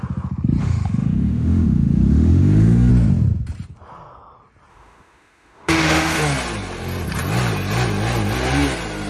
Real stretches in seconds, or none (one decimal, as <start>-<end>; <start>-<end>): 0.0-0.6; 2.9-4.7; 6.2-9.1